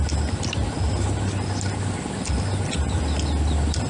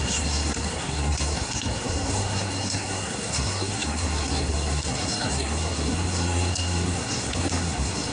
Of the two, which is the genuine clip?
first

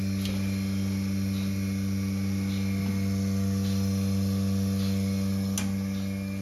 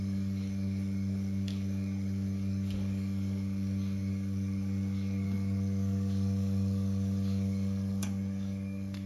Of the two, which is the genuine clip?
first